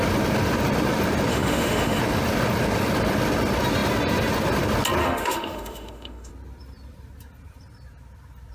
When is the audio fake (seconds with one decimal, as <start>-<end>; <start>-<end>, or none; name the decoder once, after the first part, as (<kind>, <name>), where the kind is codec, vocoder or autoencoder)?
1.3-2.0 (autoencoder, DAC-VAE); 5.0-6.3